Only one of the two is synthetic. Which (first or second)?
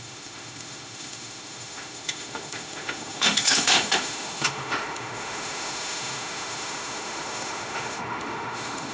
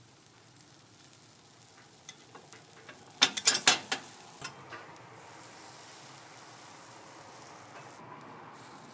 first